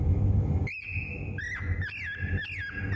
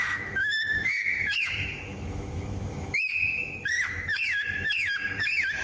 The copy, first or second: second